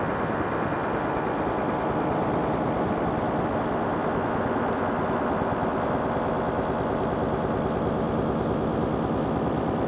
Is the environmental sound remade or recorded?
recorded